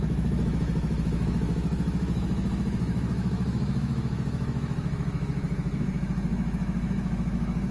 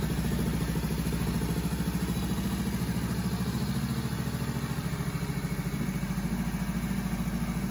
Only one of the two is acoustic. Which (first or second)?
second